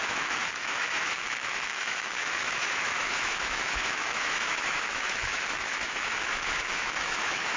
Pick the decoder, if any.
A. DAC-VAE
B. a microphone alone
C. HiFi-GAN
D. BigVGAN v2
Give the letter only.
A